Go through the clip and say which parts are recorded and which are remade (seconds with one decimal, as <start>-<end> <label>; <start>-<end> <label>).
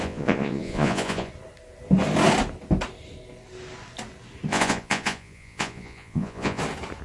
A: 0.0-1.3 remade; 1.3-4.5 recorded; 4.5-6.6 remade; 6.6-7.0 recorded